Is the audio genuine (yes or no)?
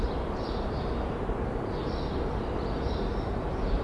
no